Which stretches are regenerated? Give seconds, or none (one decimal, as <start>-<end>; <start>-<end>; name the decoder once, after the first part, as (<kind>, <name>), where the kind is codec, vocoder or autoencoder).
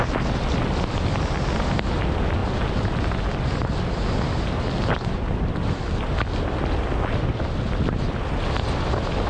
none